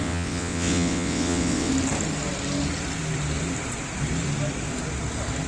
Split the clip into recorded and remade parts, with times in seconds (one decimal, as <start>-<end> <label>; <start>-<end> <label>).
0.0-1.7 remade; 1.7-5.5 recorded